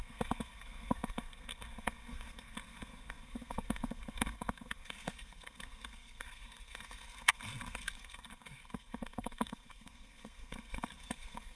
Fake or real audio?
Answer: fake